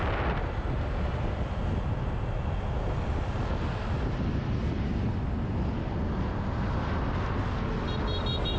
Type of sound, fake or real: real